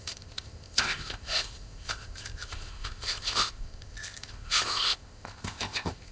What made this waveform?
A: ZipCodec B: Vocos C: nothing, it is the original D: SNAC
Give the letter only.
A